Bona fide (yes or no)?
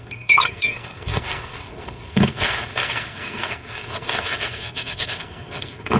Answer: no